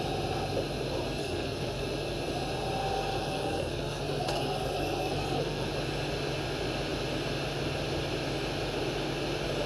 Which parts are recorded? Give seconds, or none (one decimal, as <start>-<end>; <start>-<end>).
0.0-1.2; 1.8-2.8; 5.7-9.7